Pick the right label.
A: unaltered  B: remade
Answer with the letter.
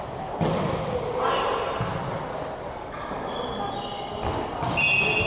A